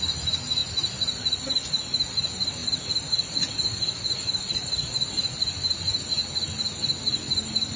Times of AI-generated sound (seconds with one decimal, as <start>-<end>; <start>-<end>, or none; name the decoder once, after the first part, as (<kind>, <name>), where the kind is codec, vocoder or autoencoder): none